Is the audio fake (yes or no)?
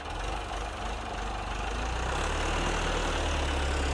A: no